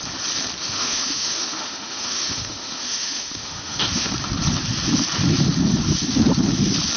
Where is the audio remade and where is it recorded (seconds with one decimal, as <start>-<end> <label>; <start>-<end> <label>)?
0.0-0.6 recorded; 0.6-4.1 remade; 4.1-7.0 recorded